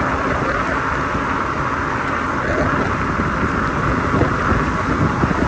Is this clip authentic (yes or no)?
yes